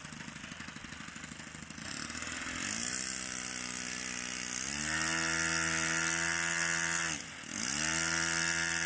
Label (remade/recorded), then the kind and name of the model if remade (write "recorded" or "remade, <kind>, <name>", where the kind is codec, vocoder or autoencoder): recorded